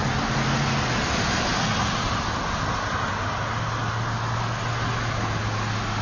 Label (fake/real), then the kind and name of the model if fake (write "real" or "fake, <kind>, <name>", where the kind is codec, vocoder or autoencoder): real